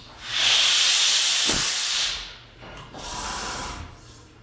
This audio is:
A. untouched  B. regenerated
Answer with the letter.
A